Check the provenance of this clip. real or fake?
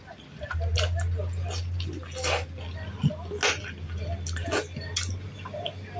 real